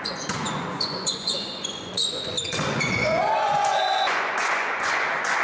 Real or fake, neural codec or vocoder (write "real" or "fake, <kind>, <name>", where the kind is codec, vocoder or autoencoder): fake, vocoder, Vocos